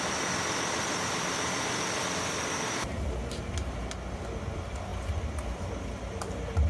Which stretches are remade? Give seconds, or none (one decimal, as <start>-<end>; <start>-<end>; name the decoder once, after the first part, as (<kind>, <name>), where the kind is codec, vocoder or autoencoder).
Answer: none